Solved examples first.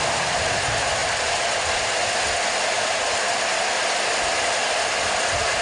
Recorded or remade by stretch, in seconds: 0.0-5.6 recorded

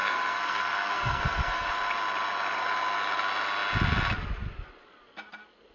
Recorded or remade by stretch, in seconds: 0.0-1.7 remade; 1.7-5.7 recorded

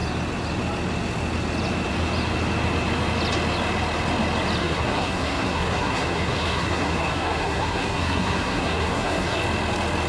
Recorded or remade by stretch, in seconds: 0.0-4.6 recorded; 4.6-9.4 remade; 9.4-10.1 recorded